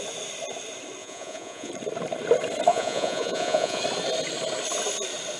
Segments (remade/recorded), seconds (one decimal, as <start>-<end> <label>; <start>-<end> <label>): 0.0-1.0 recorded; 1.0-1.7 remade; 1.7-2.7 recorded; 2.7-3.8 remade; 3.8-5.4 recorded